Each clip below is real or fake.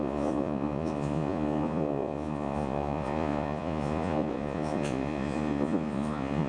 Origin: fake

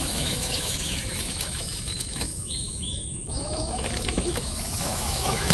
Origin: fake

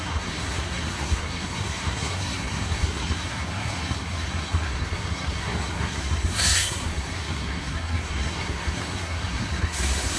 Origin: fake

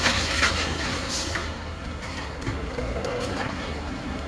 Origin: fake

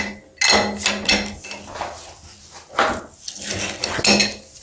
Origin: real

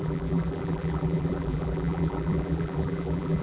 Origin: fake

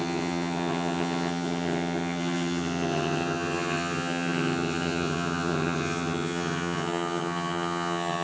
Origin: fake